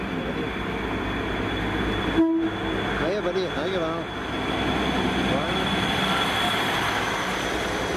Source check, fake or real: real